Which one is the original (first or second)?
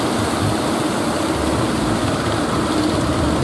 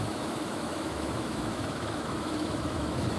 first